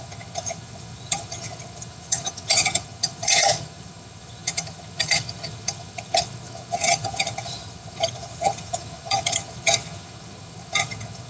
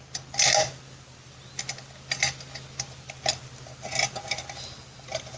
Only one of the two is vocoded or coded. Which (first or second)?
first